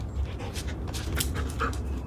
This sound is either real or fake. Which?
real